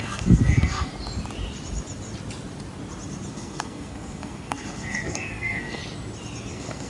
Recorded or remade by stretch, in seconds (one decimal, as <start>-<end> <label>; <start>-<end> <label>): 0.0-0.9 remade; 0.9-3.3 recorded; 3.3-5.8 remade; 5.8-6.5 recorded; 6.5-6.9 remade

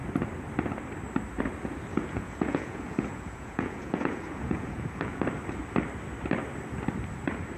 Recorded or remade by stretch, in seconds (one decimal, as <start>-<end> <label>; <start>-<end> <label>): 0.0-1.9 recorded; 1.9-5.2 remade; 5.2-7.6 recorded

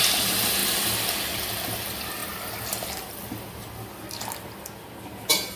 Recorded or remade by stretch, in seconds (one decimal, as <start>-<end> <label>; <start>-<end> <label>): 0.0-5.6 recorded

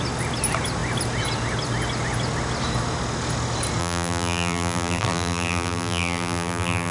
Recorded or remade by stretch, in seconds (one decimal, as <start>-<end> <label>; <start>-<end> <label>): 0.0-3.8 recorded; 3.8-6.9 remade

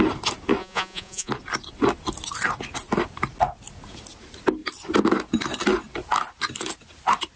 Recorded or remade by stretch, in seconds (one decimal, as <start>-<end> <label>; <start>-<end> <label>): 0.0-0.6 recorded; 0.6-1.3 remade; 1.3-7.4 recorded

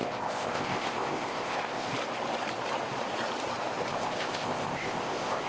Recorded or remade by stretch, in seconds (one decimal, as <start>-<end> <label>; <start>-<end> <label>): 0.0-1.9 remade; 1.9-3.9 recorded; 3.9-5.5 remade